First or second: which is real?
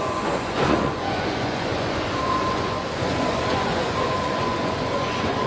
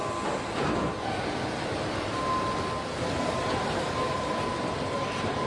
second